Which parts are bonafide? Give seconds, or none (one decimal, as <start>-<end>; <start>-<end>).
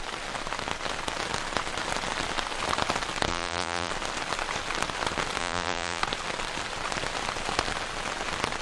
0.0-3.3; 3.9-5.4; 6.0-8.6